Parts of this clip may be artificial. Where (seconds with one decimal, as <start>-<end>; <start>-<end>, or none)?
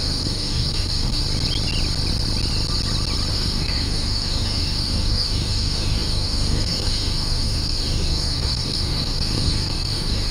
0.0-1.2; 3.3-10.3